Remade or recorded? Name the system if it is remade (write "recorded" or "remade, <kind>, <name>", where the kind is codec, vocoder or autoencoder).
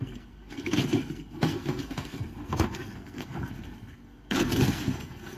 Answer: remade, codec, SNAC